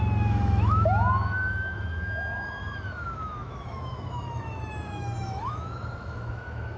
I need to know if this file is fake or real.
fake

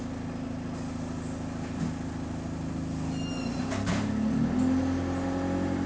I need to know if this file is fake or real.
real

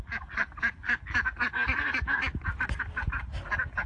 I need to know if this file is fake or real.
real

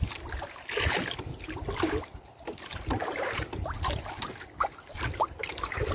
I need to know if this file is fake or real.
real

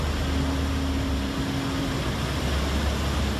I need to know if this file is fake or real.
real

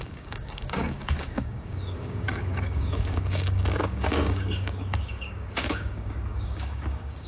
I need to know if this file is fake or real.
fake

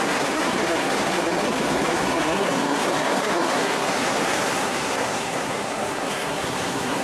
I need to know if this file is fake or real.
fake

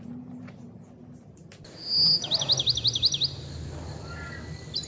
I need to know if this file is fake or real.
real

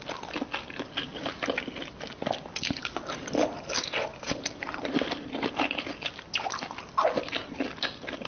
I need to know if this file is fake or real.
real